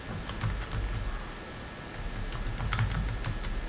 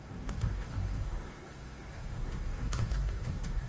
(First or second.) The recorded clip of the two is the first